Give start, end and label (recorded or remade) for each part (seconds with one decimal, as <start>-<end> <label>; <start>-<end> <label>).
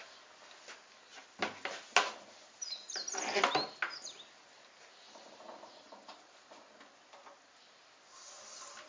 0.0-8.9 recorded